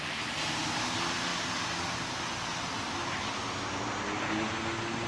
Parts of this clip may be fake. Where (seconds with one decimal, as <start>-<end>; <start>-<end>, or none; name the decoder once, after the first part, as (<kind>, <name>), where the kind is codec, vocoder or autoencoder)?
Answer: none